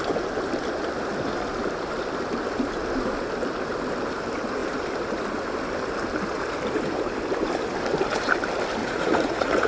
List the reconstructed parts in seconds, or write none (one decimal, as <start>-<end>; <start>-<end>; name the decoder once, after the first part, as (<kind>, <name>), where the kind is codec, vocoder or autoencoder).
8.8-9.7 (vocoder, Vocos)